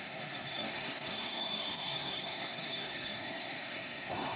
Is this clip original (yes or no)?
no